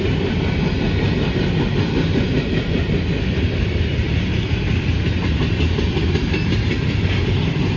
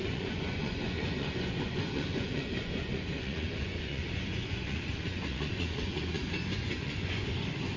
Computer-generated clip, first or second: second